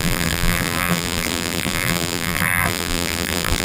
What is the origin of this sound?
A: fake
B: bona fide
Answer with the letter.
A